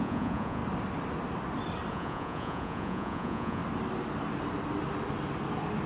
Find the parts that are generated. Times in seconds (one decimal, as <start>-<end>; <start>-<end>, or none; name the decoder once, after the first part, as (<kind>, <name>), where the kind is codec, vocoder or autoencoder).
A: 0.0-0.6 (vocoder, Vocos); 1.9-3.6